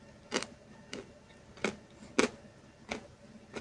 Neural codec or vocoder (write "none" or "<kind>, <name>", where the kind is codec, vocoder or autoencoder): none